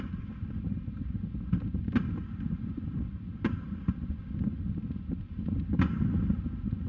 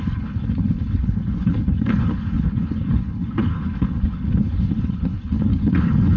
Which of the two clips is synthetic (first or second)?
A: second